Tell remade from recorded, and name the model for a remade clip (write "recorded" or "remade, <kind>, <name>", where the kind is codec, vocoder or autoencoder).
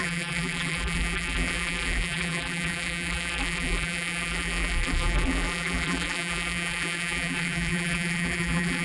remade, vocoder, BigVGAN v2